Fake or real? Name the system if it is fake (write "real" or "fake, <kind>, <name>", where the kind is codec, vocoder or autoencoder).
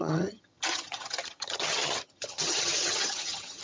fake, vocoder, HiFi-GAN